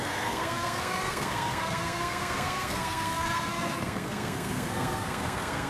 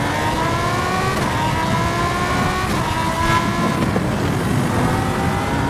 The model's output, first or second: first